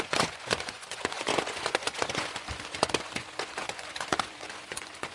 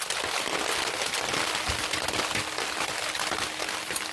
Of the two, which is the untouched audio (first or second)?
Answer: second